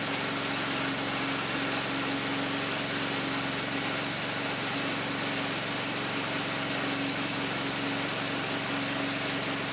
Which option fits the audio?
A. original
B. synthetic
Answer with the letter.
A